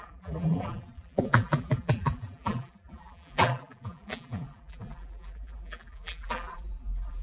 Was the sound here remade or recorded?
remade